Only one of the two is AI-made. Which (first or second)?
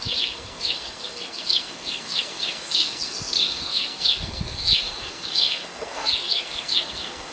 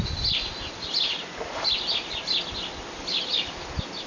first